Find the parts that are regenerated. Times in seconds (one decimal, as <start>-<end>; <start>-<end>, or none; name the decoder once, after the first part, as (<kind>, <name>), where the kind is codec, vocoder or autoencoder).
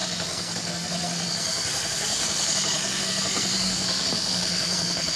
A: 0.0-5.2 (codec, SNAC)